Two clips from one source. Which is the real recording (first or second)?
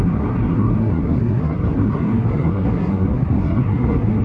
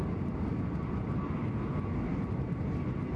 second